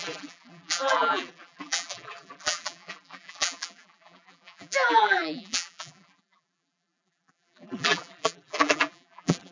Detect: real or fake fake